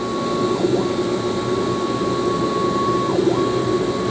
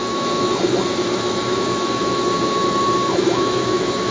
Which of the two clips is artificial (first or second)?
second